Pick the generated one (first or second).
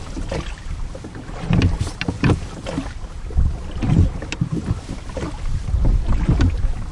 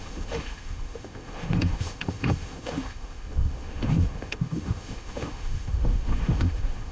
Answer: second